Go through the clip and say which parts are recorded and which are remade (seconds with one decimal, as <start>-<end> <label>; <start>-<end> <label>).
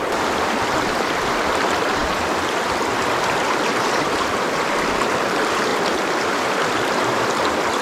0.0-5.7 remade; 5.7-6.7 recorded; 6.7-7.8 remade